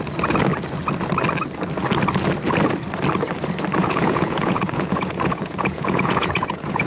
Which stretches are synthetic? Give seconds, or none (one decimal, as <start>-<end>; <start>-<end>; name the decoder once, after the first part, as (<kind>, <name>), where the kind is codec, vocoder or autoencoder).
3.8-6.9 (vocoder, Vocos)